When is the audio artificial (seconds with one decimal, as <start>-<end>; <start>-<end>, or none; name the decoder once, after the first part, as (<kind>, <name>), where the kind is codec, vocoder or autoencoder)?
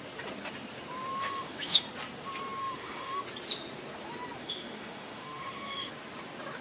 1.2-1.8 (autoencoder, DAC-VAE); 2.6-3.2; 4.4-5.9